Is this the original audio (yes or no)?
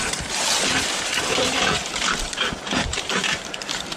no